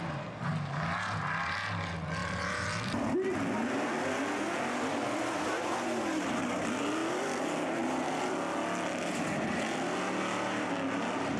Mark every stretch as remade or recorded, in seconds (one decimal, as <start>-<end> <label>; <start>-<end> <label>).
0.0-2.2 recorded; 2.2-3.0 remade; 3.0-7.0 recorded; 7.0-8.3 remade; 8.3-11.4 recorded